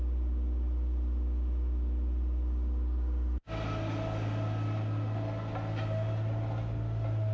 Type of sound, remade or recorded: recorded